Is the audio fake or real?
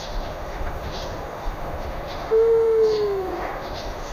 fake